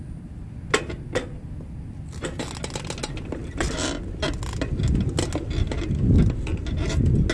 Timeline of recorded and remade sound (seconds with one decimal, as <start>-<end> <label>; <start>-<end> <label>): 0.0-7.3 recorded